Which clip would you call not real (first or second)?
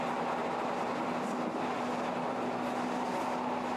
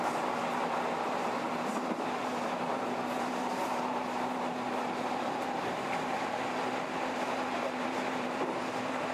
second